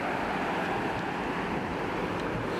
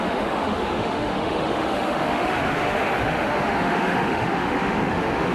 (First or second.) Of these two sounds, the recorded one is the first